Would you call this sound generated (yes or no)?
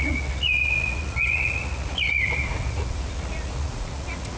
yes